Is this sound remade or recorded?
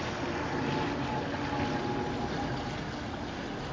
recorded